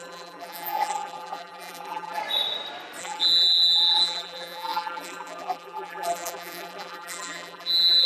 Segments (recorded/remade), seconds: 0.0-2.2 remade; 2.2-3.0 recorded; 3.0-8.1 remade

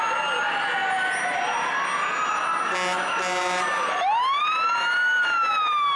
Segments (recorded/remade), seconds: 0.0-6.0 recorded

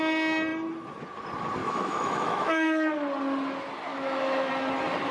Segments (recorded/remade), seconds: 0.0-1.6 recorded; 1.6-2.9 remade; 2.9-3.9 recorded; 3.9-4.5 remade; 4.5-5.1 recorded

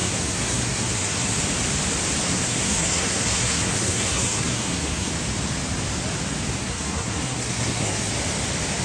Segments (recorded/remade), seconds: 0.0-1.4 remade; 1.4-2.2 recorded; 2.2-5.1 remade; 5.1-6.6 recorded; 6.6-8.1 remade; 8.1-8.8 recorded

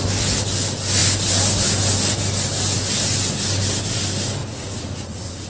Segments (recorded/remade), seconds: 0.0-4.4 recorded; 4.4-5.5 remade

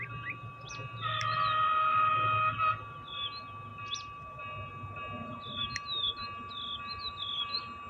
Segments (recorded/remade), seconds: 0.0-0.5 recorded; 0.5-2.1 remade; 2.1-3.7 recorded; 3.7-4.7 remade; 4.7-7.9 recorded